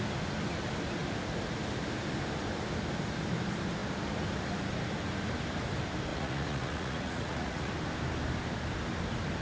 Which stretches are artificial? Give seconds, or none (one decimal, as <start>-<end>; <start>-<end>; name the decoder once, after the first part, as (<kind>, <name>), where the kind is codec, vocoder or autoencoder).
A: 6.1-7.7 (vocoder, Vocos)